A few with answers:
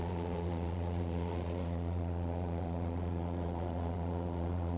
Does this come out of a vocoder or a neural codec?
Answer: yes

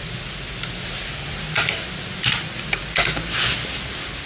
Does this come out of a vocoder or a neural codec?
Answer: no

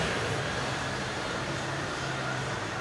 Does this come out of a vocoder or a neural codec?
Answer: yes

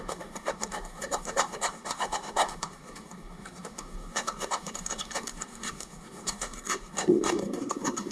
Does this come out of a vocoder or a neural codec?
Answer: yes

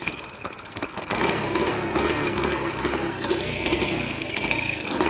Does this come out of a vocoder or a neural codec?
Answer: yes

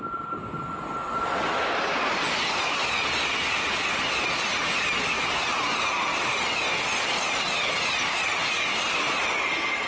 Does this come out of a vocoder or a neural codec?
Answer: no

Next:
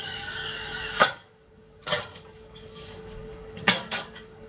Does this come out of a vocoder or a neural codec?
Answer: yes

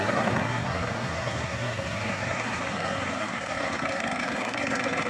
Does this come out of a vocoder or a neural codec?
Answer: yes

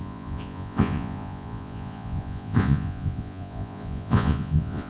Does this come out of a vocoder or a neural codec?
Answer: yes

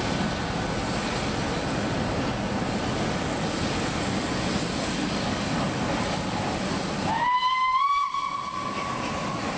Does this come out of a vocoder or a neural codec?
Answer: no